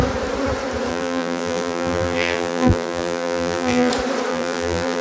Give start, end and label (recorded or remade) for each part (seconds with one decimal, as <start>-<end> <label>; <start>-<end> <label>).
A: 0.0-0.9 recorded; 0.9-3.9 remade; 3.9-4.3 recorded; 4.3-5.0 remade